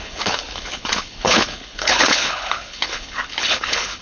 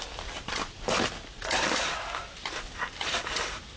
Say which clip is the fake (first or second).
first